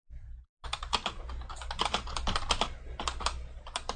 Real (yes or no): yes